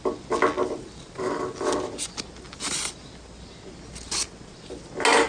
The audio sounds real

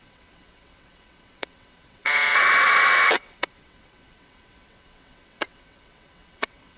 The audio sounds fake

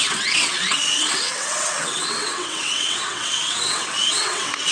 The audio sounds fake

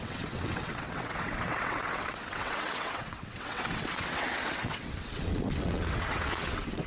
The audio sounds fake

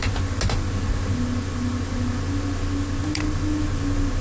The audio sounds real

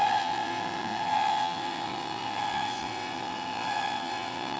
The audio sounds fake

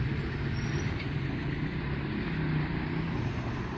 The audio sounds real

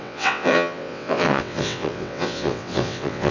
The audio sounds fake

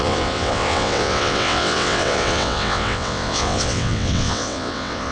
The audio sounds fake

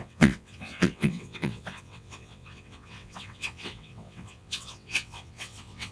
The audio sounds fake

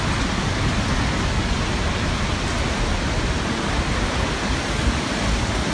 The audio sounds real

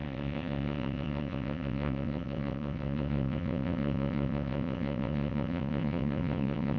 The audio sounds fake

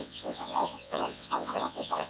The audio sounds fake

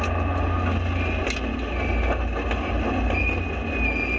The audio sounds real